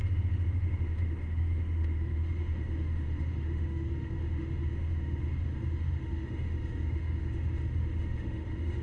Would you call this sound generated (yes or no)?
yes